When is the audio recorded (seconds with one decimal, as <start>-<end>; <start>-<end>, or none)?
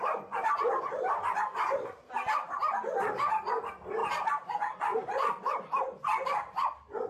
0.0-7.1